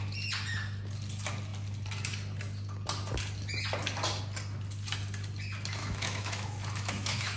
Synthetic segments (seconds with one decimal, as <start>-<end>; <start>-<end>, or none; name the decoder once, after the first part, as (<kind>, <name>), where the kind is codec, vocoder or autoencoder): 5.8-7.4 (autoencoder, DAC-VAE)